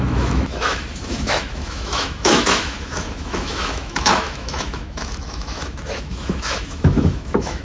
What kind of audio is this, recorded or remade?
remade